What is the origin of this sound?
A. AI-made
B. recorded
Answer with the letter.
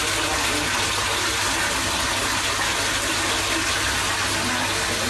B